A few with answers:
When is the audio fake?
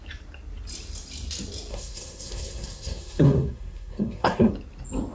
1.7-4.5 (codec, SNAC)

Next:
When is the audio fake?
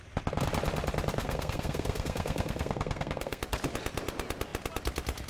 1.2-3.4 (codec, SNAC)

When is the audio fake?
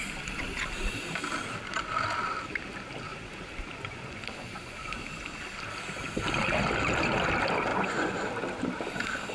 3.1-5.0 (vocoder, Vocos); 7.7-8.3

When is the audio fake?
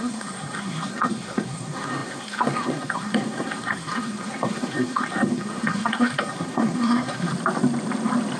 0.0-7.3 (codec, SNAC)